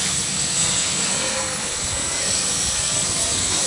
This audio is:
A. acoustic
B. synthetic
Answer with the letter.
B